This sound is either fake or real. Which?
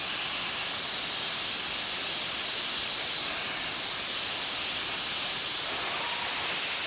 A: real